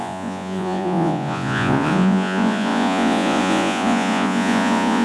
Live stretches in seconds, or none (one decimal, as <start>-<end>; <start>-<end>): none

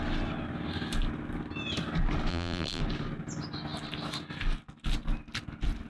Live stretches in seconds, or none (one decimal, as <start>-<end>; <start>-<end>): 0.0-2.3; 2.8-5.9

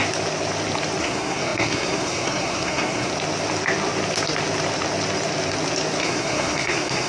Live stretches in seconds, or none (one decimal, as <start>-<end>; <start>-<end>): 0.0-1.0; 3.1-6.0